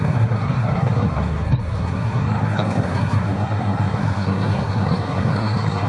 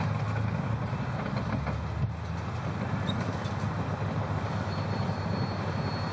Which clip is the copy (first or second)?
first